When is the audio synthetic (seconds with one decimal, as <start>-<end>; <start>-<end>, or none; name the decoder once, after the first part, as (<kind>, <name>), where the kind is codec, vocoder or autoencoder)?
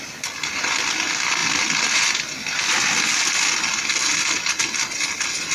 none